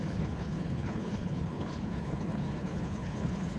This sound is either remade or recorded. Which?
remade